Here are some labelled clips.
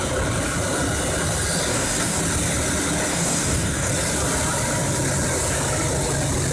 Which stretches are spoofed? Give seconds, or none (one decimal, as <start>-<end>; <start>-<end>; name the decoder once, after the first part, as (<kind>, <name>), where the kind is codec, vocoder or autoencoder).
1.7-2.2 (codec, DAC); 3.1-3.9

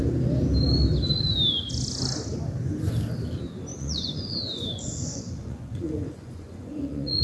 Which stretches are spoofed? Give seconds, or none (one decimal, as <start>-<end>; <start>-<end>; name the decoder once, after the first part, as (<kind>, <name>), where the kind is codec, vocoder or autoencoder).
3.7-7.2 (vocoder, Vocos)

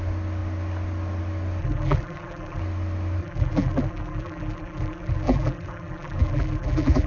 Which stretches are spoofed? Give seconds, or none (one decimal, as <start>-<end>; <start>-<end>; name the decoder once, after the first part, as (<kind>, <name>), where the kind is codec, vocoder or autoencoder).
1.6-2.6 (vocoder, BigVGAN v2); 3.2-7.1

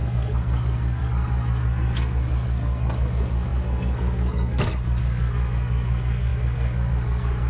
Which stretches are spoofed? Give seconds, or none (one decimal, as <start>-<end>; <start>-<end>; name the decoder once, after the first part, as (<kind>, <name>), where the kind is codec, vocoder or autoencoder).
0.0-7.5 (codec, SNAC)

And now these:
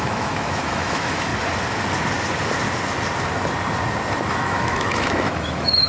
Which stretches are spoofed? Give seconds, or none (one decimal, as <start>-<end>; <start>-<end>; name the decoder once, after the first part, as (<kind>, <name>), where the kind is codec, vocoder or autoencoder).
0.0-1.3 (autoencoder, DAC-VAE); 4.3-5.9

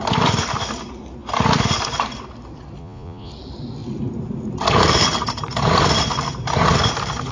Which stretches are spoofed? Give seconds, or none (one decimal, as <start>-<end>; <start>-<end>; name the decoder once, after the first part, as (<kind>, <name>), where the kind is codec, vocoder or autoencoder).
2.8-3.3 (vocoder, Vocos)

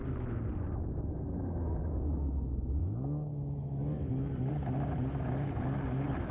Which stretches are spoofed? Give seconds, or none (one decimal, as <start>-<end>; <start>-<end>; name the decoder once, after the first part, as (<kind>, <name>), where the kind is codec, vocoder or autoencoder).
none

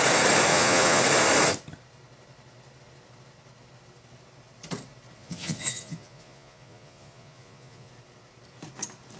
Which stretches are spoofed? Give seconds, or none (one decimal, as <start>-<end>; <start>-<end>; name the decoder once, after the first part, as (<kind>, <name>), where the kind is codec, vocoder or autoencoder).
0.5-1.0 (vocoder, Vocos); 5.2-7.9